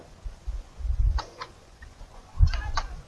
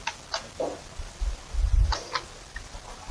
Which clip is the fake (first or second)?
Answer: first